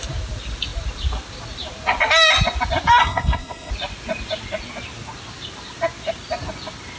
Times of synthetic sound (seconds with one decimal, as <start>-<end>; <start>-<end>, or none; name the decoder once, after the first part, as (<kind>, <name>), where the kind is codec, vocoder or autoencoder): 3.0-3.7 (codec, SNAC)